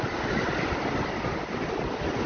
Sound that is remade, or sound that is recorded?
recorded